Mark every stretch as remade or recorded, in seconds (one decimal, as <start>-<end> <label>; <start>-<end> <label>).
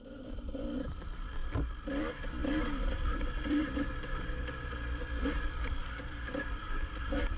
0.0-1.4 remade; 1.4-2.0 recorded; 2.0-7.4 remade